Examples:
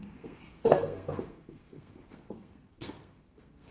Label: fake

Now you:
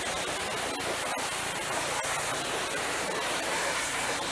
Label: real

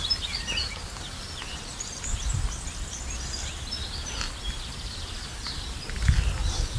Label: real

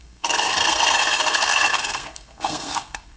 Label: fake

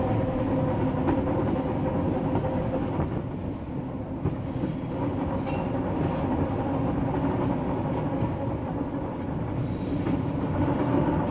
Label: real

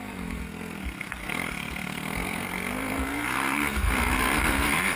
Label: fake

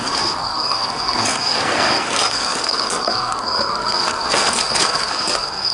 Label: fake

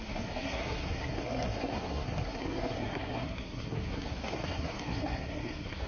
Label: fake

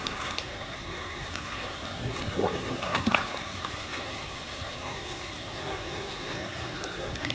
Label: fake